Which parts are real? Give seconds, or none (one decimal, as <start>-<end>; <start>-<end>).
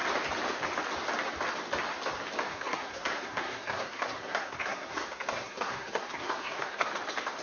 0.0-2.5; 6.9-7.4